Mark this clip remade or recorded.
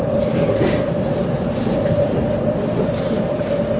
recorded